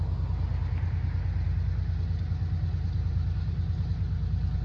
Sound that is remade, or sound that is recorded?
recorded